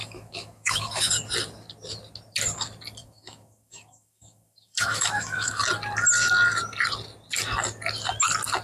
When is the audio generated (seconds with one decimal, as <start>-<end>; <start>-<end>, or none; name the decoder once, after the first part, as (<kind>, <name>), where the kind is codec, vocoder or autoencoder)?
0.0-1.1 (autoencoder, DAC-VAE); 3.0-5.6